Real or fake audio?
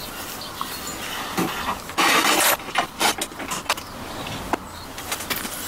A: real